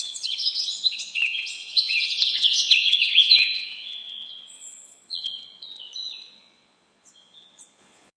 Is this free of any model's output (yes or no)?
no